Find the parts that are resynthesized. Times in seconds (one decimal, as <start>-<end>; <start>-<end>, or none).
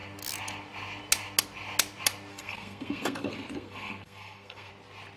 2.3-4.7